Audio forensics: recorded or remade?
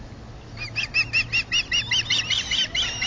recorded